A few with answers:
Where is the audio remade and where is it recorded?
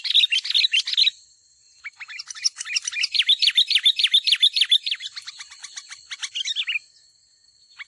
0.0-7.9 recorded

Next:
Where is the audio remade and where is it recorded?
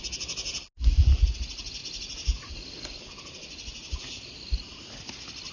0.0-5.5 recorded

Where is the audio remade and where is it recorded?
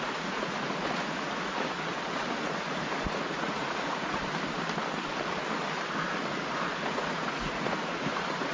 0.0-4.2 remade; 4.2-6.3 recorded; 6.3-8.5 remade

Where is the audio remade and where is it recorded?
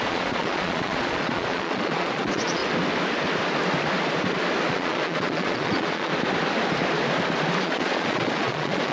0.0-2.6 remade; 2.6-4.7 recorded; 4.7-6.1 remade; 6.1-7.6 recorded; 7.6-8.9 remade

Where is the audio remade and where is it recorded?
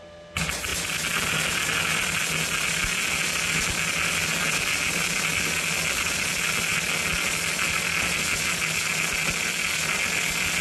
0.0-10.6 recorded